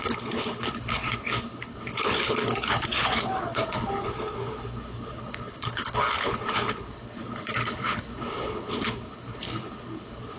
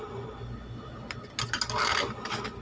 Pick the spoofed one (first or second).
first